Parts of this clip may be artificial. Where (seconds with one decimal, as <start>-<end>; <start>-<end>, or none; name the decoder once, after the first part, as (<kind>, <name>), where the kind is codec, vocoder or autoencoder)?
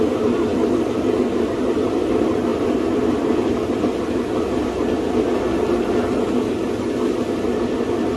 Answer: none